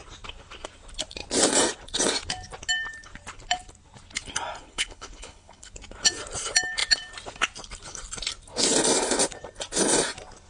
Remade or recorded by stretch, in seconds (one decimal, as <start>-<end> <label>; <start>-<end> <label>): 0.0-4.6 recorded; 4.6-5.7 remade; 5.7-10.5 recorded